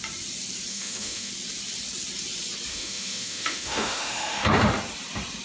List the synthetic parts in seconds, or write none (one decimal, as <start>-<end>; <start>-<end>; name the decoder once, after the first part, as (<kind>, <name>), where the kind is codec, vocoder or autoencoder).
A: 0.7-1.3 (autoencoder, DAC-VAE); 2.7-4.4